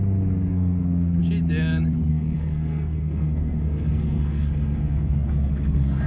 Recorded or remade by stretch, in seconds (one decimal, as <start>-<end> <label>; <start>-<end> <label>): 0.0-0.5 recorded; 0.5-1.2 remade; 1.2-2.1 recorded; 2.1-6.1 remade